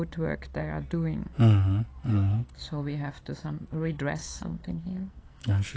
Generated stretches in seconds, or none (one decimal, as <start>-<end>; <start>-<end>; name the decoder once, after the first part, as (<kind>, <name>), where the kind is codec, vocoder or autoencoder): 2.1-2.6 (codec, SNAC); 4.2-5.8

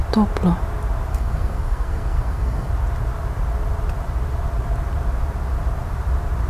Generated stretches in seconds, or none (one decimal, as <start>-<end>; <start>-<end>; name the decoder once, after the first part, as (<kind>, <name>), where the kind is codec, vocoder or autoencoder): 1.1-2.7 (codec, SNAC)

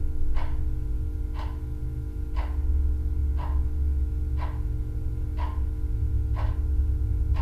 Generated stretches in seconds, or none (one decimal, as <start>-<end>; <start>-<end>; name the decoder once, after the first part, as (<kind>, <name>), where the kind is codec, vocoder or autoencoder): none

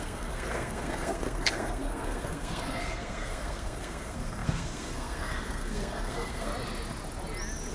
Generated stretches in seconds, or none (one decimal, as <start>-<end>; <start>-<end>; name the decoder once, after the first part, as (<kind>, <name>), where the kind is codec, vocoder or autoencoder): 0.0-6.5 (codec, SNAC)

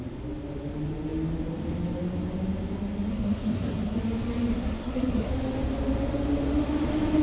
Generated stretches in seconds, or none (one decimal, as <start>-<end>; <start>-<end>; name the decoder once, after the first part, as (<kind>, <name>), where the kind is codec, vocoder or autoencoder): 3.1-4.0 (codec, SNAC); 4.5-5.3

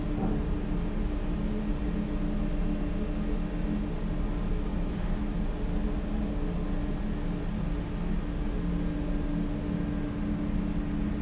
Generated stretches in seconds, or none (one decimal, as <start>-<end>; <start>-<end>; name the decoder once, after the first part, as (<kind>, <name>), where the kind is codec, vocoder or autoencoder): none